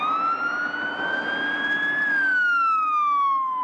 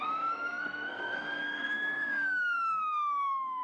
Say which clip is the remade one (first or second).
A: second